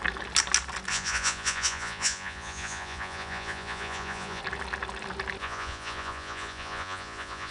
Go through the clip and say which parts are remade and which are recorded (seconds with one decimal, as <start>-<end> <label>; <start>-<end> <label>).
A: 0.0-0.9 recorded; 0.9-4.4 remade; 4.4-5.4 recorded; 5.4-7.5 remade